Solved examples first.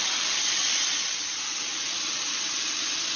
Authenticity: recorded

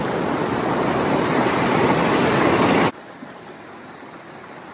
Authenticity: recorded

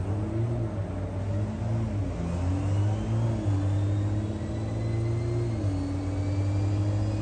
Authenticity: recorded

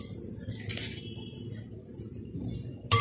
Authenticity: recorded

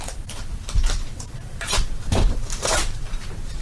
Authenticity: remade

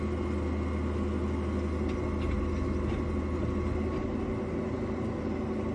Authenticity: recorded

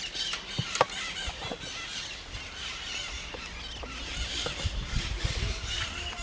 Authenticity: recorded